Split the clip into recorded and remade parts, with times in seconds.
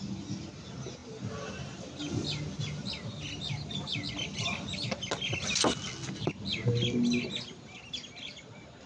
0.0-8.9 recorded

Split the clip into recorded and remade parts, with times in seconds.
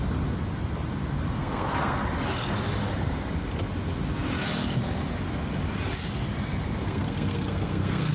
0.0-1.4 recorded; 1.4-2.0 remade; 2.0-6.8 recorded; 6.8-8.1 remade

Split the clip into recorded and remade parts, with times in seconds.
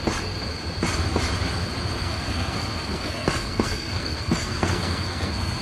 0.0-2.0 recorded; 2.0-5.6 remade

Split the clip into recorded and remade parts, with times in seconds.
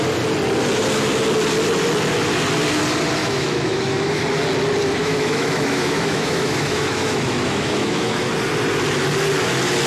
0.0-3.2 recorded; 3.2-4.2 remade; 4.2-5.0 recorded; 5.0-8.3 remade; 8.3-9.9 recorded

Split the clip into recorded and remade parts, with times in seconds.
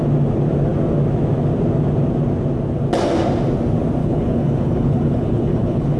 0.0-4.0 recorded; 4.0-6.0 remade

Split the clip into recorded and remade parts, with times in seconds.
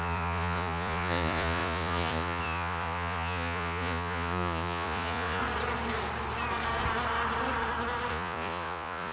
0.0-5.4 remade; 5.4-8.1 recorded; 8.1-9.1 remade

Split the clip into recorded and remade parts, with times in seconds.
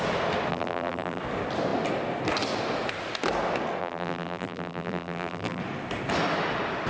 0.0-0.5 recorded; 0.5-1.2 remade; 1.2-3.8 recorded; 3.8-5.6 remade; 5.6-6.9 recorded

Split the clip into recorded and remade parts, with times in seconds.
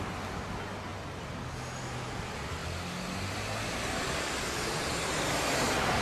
0.0-6.0 recorded